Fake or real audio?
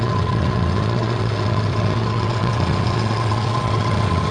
fake